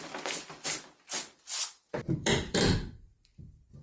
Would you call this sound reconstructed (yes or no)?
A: yes